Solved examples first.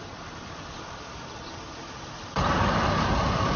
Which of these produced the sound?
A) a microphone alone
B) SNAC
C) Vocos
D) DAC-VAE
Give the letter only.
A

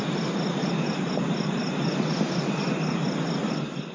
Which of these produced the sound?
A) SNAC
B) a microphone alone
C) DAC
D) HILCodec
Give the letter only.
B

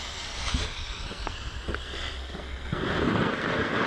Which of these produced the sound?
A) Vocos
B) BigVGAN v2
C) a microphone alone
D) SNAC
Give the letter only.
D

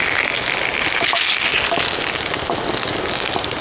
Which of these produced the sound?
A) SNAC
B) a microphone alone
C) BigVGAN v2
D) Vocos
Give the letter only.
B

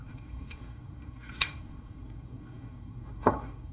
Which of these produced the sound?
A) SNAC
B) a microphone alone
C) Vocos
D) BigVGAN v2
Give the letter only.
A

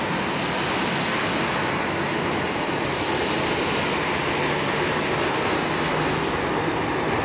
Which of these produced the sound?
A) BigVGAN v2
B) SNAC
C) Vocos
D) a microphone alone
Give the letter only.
D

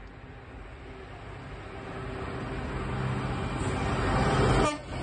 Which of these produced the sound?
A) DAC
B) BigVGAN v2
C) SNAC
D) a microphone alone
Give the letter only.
D